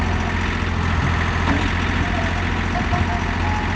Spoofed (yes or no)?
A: no